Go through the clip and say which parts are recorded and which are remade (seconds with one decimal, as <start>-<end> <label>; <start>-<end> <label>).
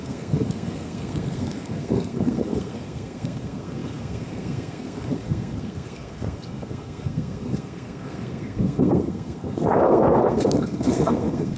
0.0-11.6 remade